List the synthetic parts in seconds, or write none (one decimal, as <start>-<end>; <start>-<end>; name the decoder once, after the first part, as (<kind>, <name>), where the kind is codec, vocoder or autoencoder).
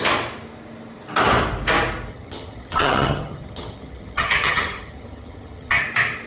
2.1-5.8 (vocoder, HiFi-GAN)